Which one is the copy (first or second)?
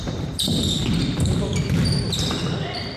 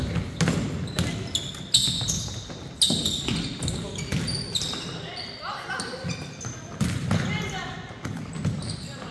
first